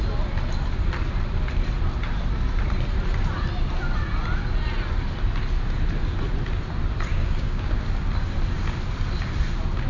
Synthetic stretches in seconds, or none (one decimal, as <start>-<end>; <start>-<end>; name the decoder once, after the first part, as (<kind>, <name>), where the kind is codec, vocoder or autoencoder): 7.1-7.7 (codec, DAC)